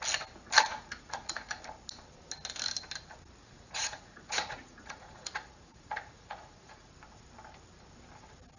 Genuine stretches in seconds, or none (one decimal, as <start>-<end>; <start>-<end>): 0.0-0.7; 1.6-3.4; 6.9-8.6